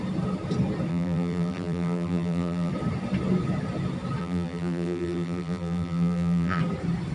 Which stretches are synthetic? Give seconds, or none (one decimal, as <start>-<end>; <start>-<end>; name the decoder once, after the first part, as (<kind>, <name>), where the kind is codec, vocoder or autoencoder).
0.9-2.7 (vocoder, BigVGAN v2); 4.2-6.6